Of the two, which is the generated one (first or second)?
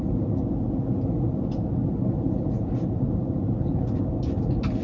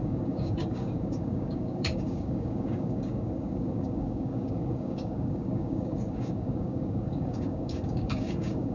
second